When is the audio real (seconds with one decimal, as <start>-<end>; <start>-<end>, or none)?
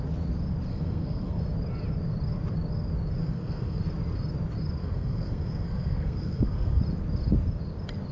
0.0-0.7; 1.4-3.2; 3.8-4.8; 6.8-8.1